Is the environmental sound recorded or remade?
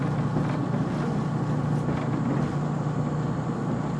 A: recorded